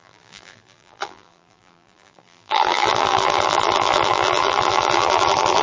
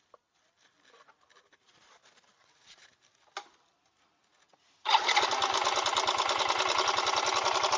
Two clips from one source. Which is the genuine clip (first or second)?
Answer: second